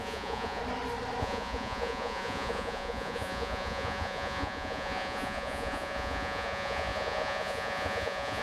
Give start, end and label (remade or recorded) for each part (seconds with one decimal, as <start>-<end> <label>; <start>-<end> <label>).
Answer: 0.0-0.6 remade; 0.6-1.2 recorded; 1.2-8.4 remade